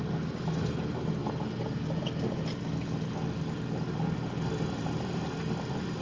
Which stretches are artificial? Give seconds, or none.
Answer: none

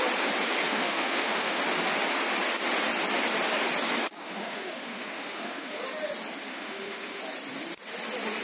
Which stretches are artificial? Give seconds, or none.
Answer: 0.7-1.6 (autoencoder, DAC-VAE); 4.2-5.8; 6.5-7.2

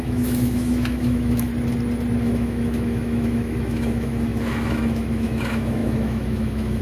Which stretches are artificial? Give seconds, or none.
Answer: 0.0-1.5 (autoencoder, DAC-VAE); 2.2-6.8

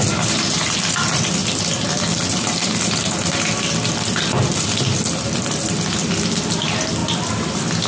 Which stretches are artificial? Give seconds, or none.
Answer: none

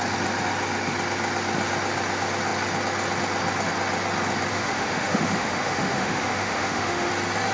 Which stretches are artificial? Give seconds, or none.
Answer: 4.5-7.1 (autoencoder, DAC-VAE)

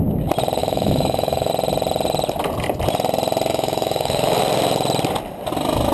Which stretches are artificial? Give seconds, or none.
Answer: 0.6-1.5 (autoencoder, DAC-VAE); 3.5-4.4

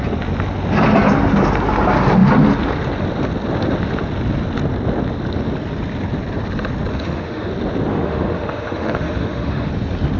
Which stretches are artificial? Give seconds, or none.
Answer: 6.9-7.5 (autoencoder, DAC-VAE); 7.9-9.7

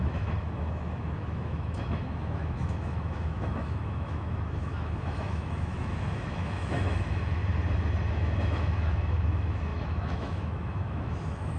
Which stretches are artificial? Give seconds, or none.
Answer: 0.0-7.4 (autoencoder, DAC-VAE); 8.1-11.6